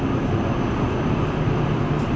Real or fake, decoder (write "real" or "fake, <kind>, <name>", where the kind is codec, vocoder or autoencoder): real